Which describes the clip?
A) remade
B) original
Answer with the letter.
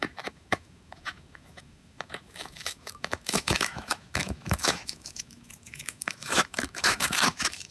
A